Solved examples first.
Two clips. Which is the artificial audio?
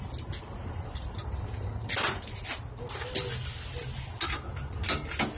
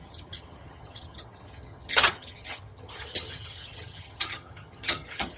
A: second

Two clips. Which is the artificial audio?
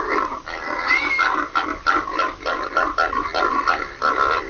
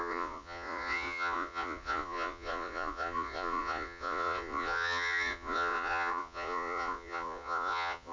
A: second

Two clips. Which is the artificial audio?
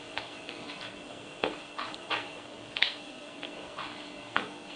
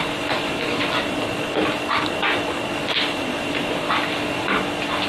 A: first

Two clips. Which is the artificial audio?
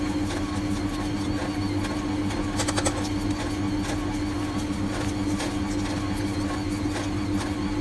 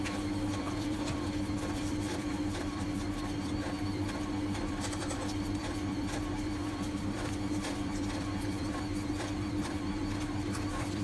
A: second